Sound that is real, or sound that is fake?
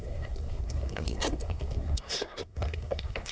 fake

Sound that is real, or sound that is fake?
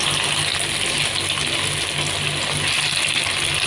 real